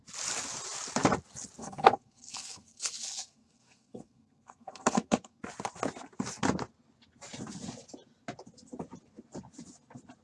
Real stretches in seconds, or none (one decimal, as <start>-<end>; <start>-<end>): 0.0-1.6; 5.4-10.2